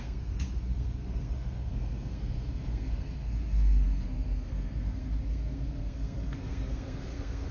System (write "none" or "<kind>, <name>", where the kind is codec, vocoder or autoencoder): codec, SNAC